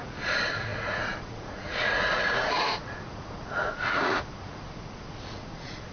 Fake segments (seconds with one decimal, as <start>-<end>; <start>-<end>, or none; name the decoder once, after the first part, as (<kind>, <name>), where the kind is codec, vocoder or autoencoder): 0.0-5.9 (vocoder, Vocos)